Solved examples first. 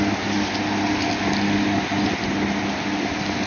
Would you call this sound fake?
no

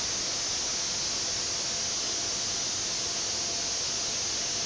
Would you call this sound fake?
no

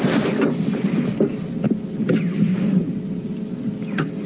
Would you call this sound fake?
no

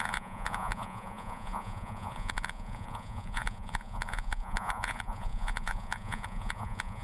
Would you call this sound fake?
yes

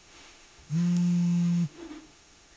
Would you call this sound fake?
yes